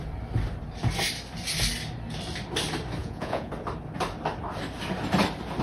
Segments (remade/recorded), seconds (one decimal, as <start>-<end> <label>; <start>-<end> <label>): 0.0-3.0 recorded; 3.0-3.5 remade; 3.5-5.6 recorded